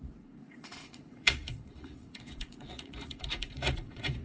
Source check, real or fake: fake